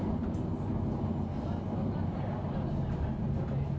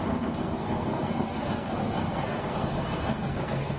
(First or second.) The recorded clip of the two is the first